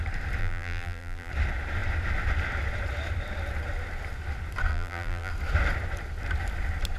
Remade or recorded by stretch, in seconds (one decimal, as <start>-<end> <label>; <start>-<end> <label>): 0.0-0.4 recorded; 0.4-1.3 remade; 1.3-4.7 recorded; 4.7-5.3 remade; 5.3-7.0 recorded